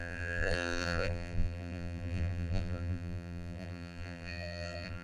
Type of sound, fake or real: fake